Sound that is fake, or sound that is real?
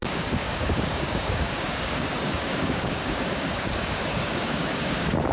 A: fake